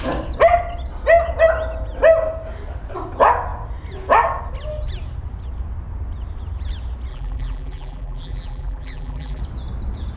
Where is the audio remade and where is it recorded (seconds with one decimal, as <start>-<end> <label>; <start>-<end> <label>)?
0.0-7.1 recorded; 7.1-9.4 remade; 9.4-10.2 recorded